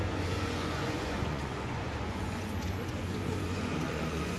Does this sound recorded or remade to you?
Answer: remade